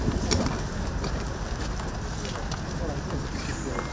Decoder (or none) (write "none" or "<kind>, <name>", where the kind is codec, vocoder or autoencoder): none